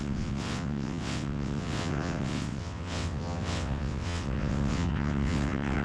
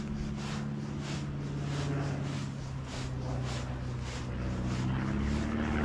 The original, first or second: second